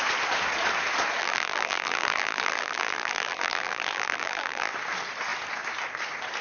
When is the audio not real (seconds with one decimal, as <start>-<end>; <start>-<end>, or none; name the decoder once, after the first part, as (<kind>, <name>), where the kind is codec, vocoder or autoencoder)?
1.2-4.7 (vocoder, BigVGAN v2)